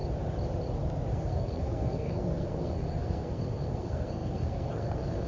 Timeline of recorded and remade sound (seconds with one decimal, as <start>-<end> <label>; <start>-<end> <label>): 0.0-1.1 recorded; 1.1-5.3 remade